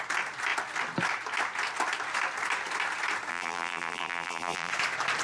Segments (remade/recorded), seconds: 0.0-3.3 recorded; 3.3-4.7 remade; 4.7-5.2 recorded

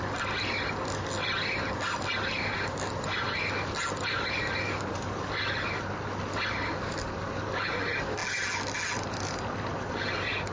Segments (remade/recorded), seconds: 0.0-10.5 recorded

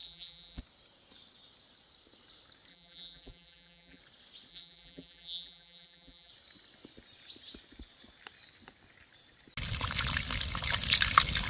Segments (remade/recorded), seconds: 0.0-0.6 remade; 0.6-2.7 recorded; 2.7-4.0 remade; 4.0-4.5 recorded; 4.5-6.3 remade; 6.3-11.5 recorded

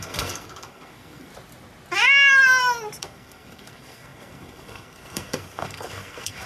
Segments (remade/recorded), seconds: 0.0-1.3 remade; 1.3-3.0 recorded; 3.0-6.5 remade

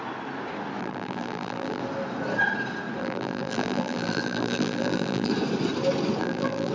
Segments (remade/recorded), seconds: 0.0-0.8 recorded; 0.8-1.8 remade; 1.8-3.0 recorded; 3.0-5.3 remade; 5.3-6.2 recorded; 6.2-6.7 remade

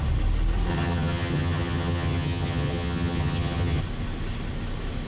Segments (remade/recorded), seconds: 0.0-0.7 recorded; 0.7-3.8 remade; 3.8-5.1 recorded